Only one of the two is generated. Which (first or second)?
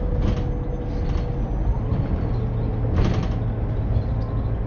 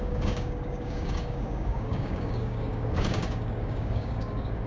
second